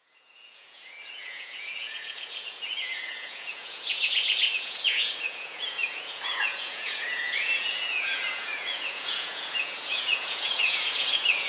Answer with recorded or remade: remade